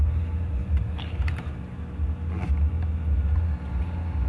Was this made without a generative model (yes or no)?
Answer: yes